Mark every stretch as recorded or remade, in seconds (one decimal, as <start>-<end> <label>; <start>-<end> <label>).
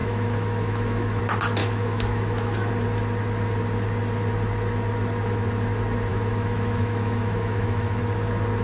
0.0-1.2 remade; 1.2-1.6 recorded; 1.6-2.7 remade; 2.7-6.1 recorded; 6.1-8.0 remade; 8.0-8.6 recorded